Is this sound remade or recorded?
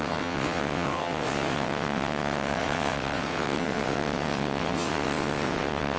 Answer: remade